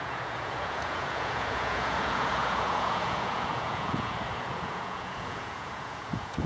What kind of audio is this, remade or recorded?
remade